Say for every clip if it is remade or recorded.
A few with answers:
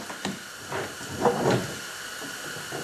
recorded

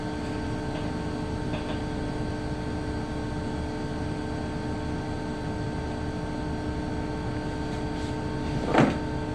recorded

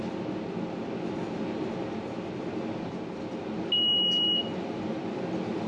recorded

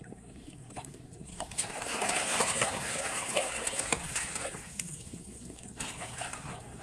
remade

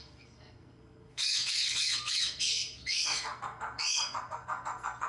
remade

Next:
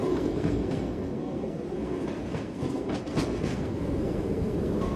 remade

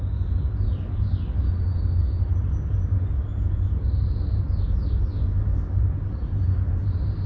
recorded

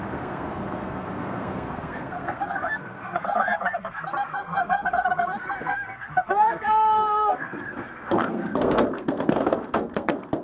remade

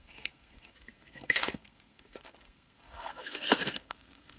remade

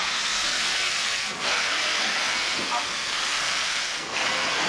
remade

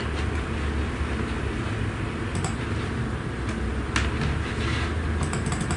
recorded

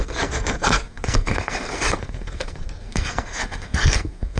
remade